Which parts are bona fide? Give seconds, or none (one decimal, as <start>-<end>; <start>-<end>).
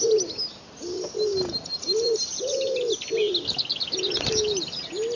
0.0-5.2